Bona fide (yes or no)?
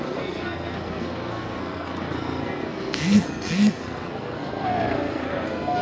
no